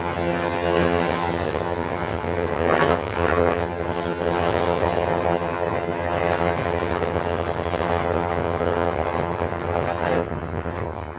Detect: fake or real fake